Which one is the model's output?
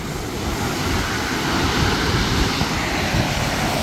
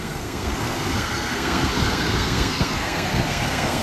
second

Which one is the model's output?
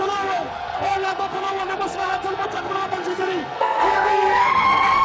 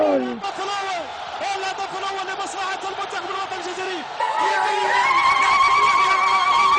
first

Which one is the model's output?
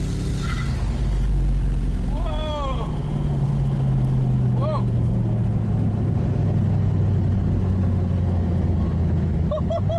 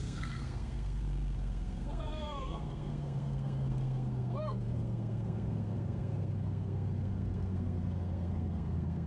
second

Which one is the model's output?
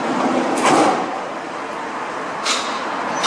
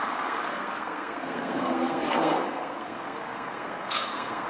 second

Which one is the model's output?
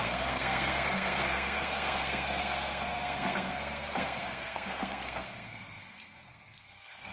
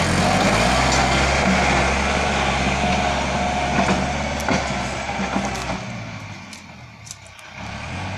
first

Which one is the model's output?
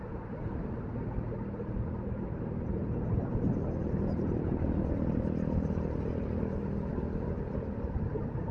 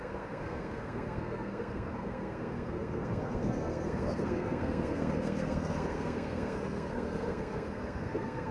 second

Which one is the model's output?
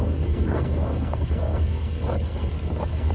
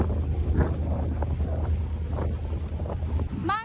first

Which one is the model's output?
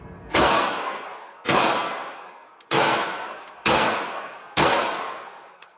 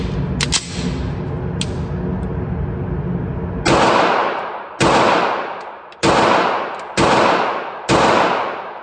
first